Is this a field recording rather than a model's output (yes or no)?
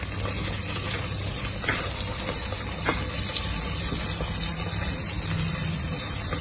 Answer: yes